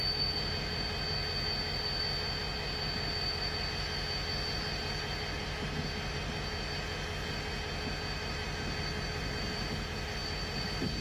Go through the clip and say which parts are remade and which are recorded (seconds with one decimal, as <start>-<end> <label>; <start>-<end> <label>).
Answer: 0.0-11.0 recorded